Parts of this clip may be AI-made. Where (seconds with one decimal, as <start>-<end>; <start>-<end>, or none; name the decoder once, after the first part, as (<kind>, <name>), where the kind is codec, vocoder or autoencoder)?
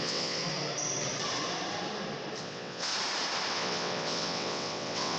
0.0-0.4 (vocoder, WaveNeXt); 2.4-2.9; 3.5-5.2